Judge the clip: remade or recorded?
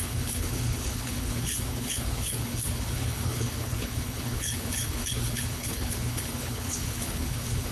remade